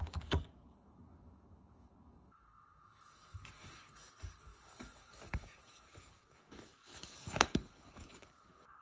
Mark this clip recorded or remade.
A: remade